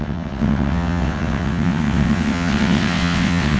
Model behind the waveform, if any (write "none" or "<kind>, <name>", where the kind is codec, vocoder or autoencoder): vocoder, WaveNeXt